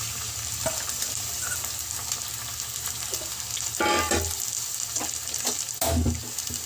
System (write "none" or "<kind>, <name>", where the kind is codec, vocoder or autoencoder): none